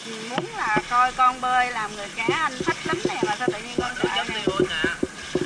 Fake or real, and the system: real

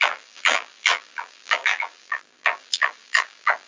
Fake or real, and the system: fake, vocoder, BigVGAN v2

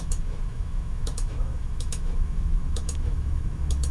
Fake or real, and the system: fake, autoencoder, DAC-VAE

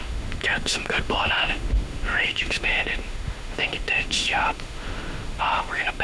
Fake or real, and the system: fake, autoencoder, DAC-VAE